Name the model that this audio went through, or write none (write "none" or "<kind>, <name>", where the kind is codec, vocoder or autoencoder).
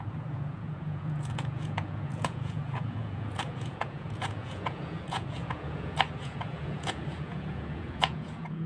vocoder, Vocos